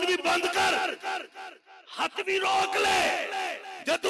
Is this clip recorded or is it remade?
recorded